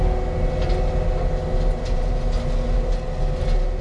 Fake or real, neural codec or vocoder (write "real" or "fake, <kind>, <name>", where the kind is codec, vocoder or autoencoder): real